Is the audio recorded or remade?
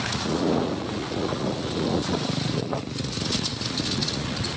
remade